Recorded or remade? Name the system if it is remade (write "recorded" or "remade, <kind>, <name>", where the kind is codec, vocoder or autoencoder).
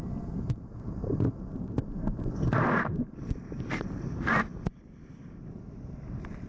recorded